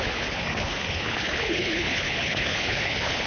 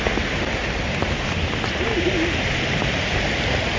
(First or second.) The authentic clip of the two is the second